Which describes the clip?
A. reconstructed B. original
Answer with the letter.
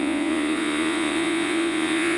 A